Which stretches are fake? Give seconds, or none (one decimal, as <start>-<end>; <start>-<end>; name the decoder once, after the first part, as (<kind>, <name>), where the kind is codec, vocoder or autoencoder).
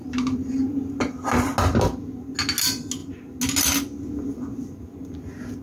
0.0-1.4 (vocoder, BigVGAN v2)